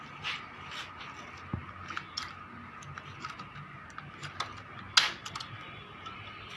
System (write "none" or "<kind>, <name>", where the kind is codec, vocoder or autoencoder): none